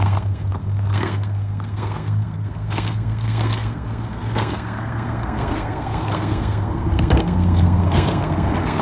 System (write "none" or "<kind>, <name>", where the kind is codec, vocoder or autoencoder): codec, SNAC